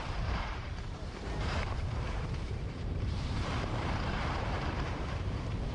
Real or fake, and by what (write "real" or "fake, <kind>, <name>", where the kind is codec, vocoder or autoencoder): fake, vocoder, BigVGAN v2